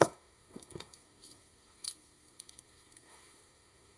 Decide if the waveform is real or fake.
fake